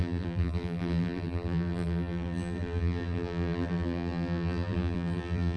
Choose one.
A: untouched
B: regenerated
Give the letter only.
B